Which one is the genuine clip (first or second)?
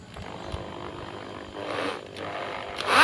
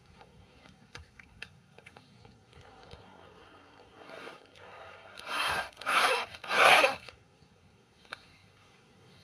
first